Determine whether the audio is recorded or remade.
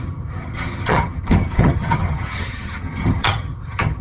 remade